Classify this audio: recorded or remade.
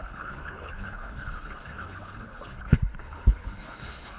remade